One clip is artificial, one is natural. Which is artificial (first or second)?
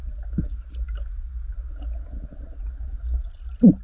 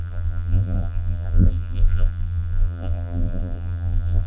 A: second